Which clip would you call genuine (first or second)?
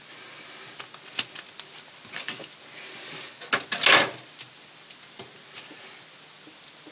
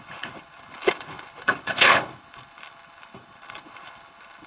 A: first